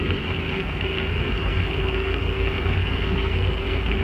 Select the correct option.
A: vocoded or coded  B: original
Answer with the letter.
A